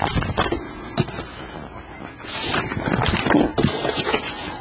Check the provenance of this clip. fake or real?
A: real